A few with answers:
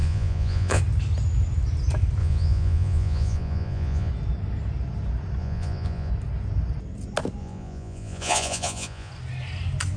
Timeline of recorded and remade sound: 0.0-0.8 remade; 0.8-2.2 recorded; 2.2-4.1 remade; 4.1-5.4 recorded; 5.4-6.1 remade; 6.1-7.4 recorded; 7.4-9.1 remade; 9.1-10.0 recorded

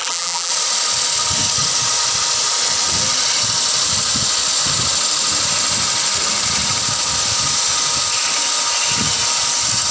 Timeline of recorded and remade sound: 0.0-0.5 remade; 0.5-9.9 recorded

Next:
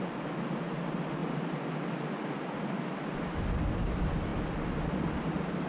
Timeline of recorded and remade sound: 0.0-5.7 recorded

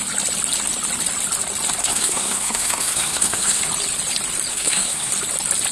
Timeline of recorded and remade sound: 0.0-1.8 recorded; 1.8-3.6 remade; 3.6-4.5 recorded; 4.5-5.1 remade; 5.1-5.7 recorded

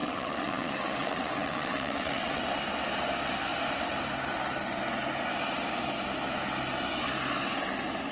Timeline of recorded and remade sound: 0.0-2.4 remade; 2.4-8.1 recorded

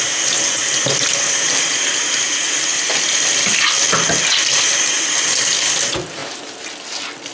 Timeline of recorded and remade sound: 0.0-7.3 recorded